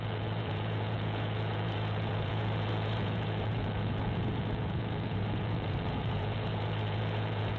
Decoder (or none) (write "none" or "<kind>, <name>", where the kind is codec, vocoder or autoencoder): vocoder, Vocos